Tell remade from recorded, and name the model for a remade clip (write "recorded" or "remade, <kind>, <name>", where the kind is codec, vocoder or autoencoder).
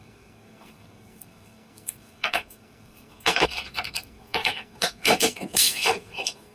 remade, codec, SNAC